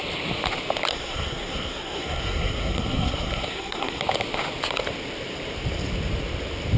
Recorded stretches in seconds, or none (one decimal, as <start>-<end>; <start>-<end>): 0.0-0.9; 4.0-6.8

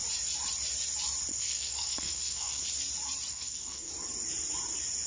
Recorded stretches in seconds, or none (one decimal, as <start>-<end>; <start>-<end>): 0.0-1.3; 2.6-3.3; 3.9-5.1

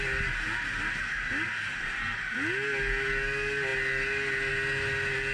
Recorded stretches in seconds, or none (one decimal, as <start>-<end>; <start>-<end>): 0.0-5.3

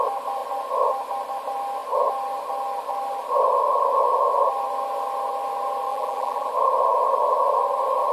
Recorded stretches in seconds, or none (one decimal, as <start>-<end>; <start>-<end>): 0.0-5.9; 6.5-8.1